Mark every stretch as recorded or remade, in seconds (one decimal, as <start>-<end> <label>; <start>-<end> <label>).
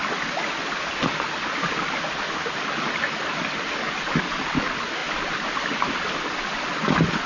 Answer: 0.0-7.3 recorded